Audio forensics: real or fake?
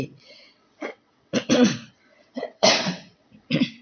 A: fake